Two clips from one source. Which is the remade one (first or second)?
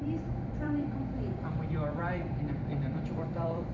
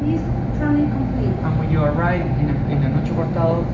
first